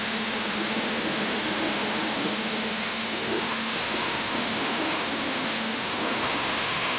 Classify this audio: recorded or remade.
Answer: remade